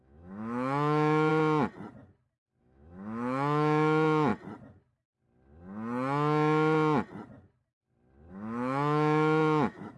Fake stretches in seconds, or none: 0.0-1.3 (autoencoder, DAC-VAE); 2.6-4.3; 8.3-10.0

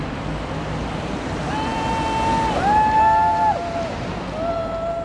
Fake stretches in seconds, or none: none

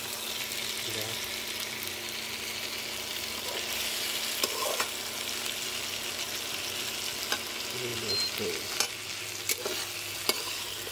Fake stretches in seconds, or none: none

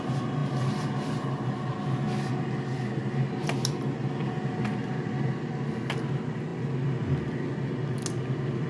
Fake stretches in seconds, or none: none

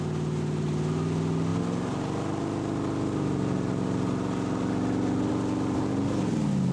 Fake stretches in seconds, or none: none

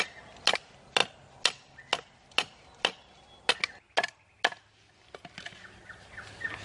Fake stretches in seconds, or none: none

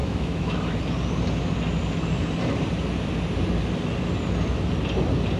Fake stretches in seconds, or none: 0.0-0.8 (autoencoder, DAC-VAE)